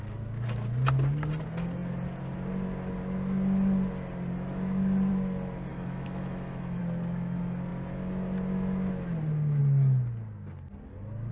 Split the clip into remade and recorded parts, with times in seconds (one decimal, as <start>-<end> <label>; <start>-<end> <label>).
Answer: 0.0-5.7 recorded; 5.7-6.8 remade; 6.8-11.3 recorded